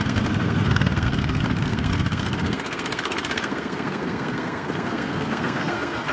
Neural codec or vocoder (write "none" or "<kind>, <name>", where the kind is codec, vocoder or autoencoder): codec, SNAC